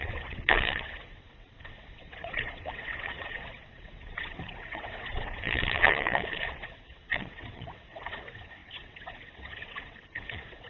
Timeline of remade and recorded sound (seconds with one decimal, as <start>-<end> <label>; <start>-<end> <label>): 0.0-10.7 remade